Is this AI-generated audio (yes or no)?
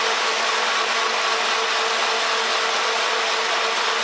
no